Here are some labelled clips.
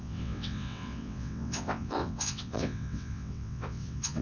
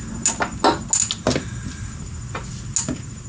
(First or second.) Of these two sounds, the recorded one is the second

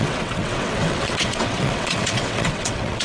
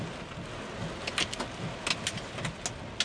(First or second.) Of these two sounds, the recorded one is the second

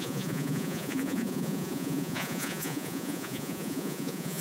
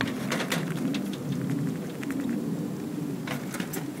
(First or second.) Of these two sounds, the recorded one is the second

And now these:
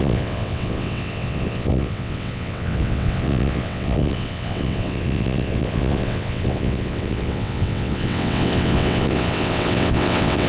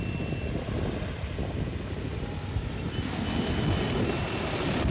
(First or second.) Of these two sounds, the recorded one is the second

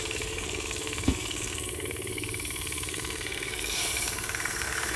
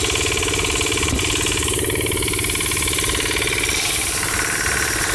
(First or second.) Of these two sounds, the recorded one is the second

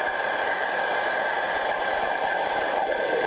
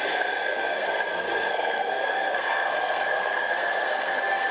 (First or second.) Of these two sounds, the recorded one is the first